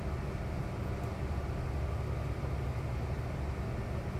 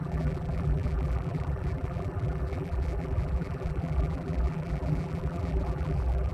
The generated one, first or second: second